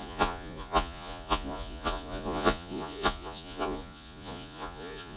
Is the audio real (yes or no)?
no